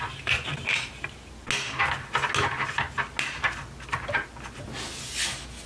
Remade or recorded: recorded